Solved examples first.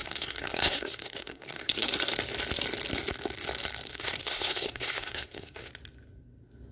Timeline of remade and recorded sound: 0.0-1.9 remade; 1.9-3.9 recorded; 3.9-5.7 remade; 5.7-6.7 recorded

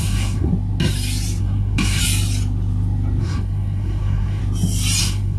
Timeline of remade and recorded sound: 0.0-0.5 remade; 0.5-1.4 recorded; 1.4-2.0 remade; 2.0-3.2 recorded; 3.2-4.4 remade; 4.4-5.0 recorded; 5.0-5.4 remade

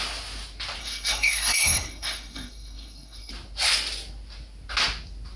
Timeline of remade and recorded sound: 0.0-0.8 recorded; 0.8-3.3 remade; 3.3-5.4 recorded